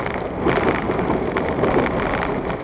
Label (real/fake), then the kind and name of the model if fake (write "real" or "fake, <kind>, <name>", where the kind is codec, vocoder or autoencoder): real